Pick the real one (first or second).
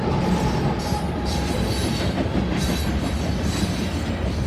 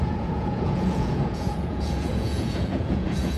first